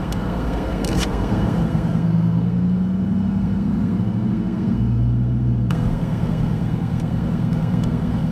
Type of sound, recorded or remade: remade